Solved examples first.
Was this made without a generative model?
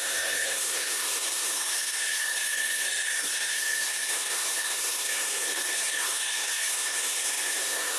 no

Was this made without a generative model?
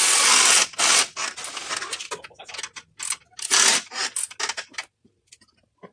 yes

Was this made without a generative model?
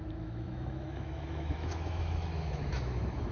no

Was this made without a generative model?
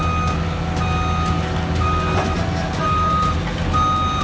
yes